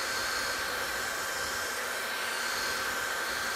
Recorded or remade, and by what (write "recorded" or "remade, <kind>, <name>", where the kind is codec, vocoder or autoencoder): recorded